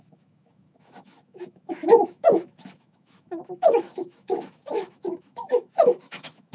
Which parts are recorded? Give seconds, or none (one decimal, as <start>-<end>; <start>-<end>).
none